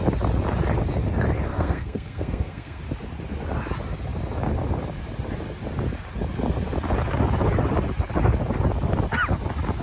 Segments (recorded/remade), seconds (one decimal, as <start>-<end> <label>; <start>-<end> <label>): 0.0-1.5 recorded; 1.5-2.8 remade; 2.8-9.8 recorded